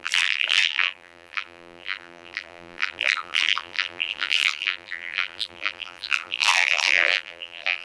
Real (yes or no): no